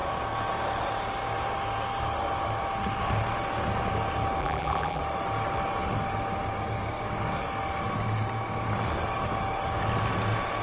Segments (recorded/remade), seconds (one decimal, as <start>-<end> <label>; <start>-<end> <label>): 0.0-4.4 recorded; 4.4-5.0 remade; 5.0-10.6 recorded